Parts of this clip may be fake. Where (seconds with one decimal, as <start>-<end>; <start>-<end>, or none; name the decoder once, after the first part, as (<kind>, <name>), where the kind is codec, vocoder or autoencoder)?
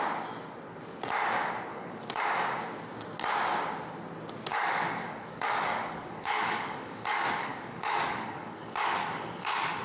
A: 1.7-2.2 (codec, DAC); 4.5-9.8